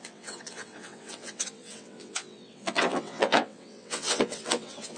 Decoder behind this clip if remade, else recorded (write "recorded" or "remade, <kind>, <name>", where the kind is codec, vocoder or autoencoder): remade, vocoder, WaveNeXt